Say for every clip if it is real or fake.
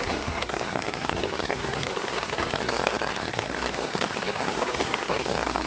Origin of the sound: fake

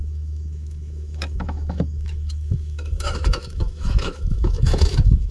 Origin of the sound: fake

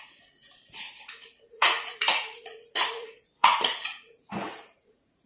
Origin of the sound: fake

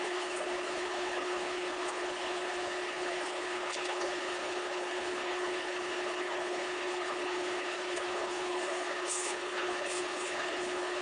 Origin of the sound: fake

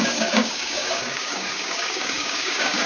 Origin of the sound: fake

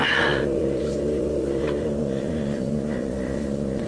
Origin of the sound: fake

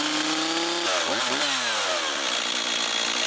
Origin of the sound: real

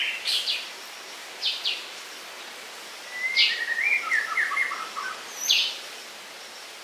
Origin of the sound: real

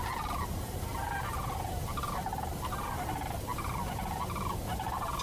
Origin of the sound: real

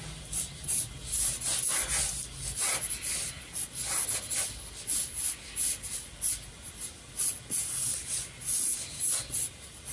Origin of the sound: real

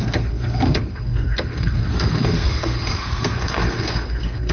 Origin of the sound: fake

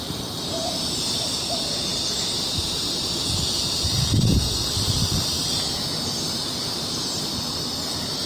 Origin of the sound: fake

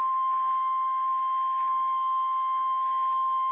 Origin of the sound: fake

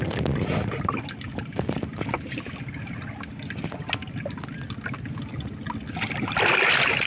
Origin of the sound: real